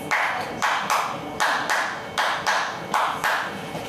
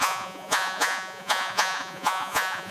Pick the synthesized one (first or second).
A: second